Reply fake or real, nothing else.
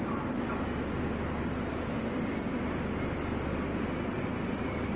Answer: real